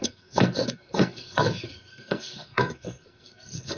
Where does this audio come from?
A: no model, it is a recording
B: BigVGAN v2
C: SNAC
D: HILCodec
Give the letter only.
C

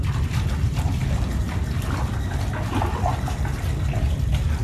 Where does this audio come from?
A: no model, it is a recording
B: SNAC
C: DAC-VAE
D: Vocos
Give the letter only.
A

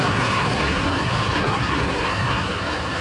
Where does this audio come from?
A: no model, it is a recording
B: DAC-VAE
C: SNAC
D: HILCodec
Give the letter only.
C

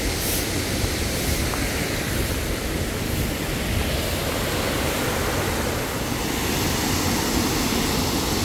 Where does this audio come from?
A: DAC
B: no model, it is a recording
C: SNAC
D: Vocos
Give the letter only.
B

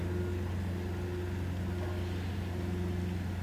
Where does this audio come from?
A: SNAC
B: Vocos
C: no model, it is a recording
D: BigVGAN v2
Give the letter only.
C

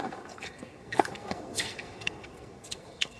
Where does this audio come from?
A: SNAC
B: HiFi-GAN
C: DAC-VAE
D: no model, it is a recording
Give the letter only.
A